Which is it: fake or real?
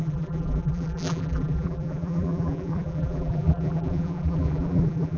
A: fake